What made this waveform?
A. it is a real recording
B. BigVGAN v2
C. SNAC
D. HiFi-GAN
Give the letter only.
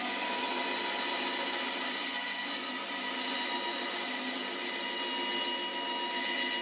A